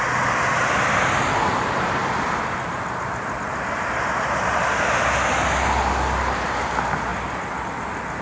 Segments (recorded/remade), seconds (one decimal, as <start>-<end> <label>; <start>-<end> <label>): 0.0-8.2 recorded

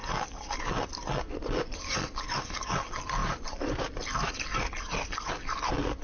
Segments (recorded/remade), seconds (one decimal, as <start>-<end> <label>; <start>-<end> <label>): 0.0-3.2 recorded; 3.2-4.4 remade; 4.4-6.0 recorded

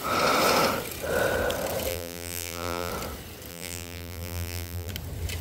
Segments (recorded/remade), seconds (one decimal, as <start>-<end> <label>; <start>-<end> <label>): 0.0-1.9 recorded; 1.9-2.9 remade; 2.9-3.5 recorded; 3.5-4.9 remade; 4.9-5.4 recorded

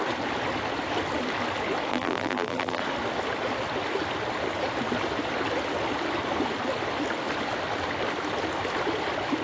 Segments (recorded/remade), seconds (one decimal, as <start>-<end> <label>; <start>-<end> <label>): 0.0-1.9 recorded; 1.9-2.8 remade; 2.8-9.4 recorded

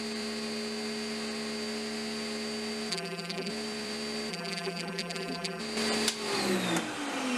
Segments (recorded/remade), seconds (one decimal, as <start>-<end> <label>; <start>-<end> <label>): 0.0-2.9 recorded; 2.9-3.5 remade; 3.5-4.3 recorded; 4.3-5.6 remade; 5.6-7.4 recorded

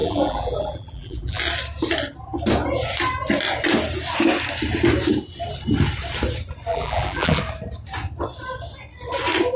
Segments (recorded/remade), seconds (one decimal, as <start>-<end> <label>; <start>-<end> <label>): 0.0-1.4 remade; 1.4-6.7 recorded; 6.7-7.4 remade; 7.4-9.6 recorded

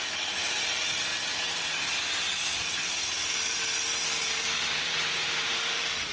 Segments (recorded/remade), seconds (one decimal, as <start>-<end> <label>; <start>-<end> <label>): 0.0-1.1 remade; 1.1-4.8 recorded; 4.8-6.1 remade

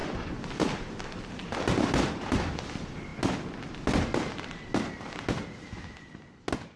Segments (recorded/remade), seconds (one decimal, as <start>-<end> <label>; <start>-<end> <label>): 0.0-3.1 remade; 3.1-6.8 recorded